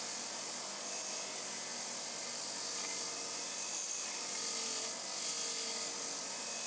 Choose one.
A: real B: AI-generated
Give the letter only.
A